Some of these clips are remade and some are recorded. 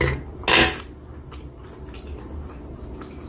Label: recorded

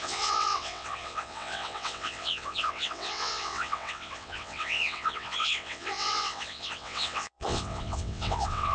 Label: remade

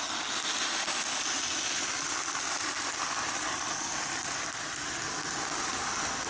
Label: recorded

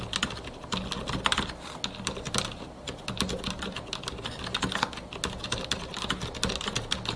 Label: recorded